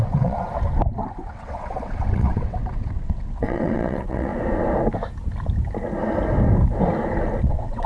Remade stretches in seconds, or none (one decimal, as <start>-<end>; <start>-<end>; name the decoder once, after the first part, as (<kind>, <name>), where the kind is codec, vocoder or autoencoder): 0.0-0.4 (vocoder, WaveNeXt); 1.1-4.3; 7.4-7.9